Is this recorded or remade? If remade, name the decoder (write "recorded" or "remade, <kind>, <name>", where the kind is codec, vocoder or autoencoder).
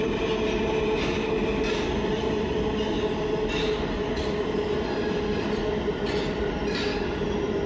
recorded